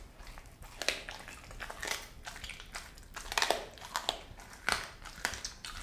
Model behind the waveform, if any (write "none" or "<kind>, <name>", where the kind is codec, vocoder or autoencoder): none